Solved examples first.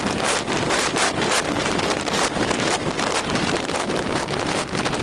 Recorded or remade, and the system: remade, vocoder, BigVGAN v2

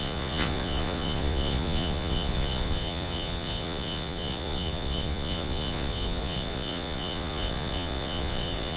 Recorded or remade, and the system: remade, vocoder, Vocos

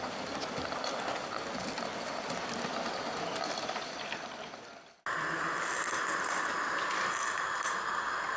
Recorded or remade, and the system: recorded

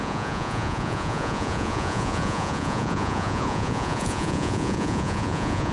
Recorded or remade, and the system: remade, vocoder, Vocos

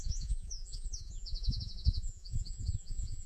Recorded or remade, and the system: remade, vocoder, Vocos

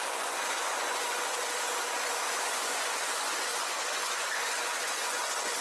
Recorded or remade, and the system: remade, vocoder, Vocos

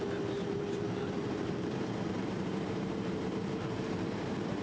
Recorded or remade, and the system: remade, vocoder, BigVGAN v2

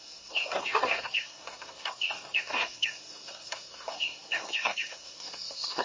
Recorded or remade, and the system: remade, codec, SNAC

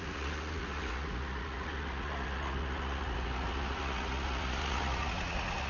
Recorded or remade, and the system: remade, vocoder, Vocos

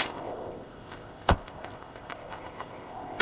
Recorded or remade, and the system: remade, codec, ZipCodec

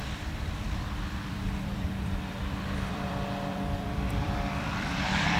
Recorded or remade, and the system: remade, vocoder, BigVGAN v2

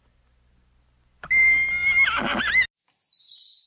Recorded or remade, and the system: recorded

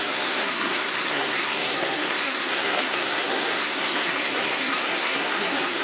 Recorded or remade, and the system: remade, codec, SNAC